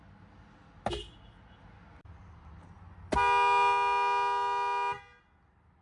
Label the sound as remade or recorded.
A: recorded